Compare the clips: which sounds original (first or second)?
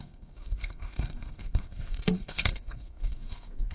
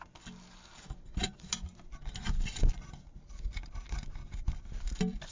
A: second